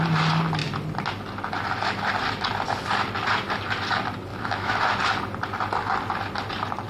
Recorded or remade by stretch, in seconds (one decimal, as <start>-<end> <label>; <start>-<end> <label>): 0.0-4.3 recorded; 4.3-4.8 remade; 4.8-6.9 recorded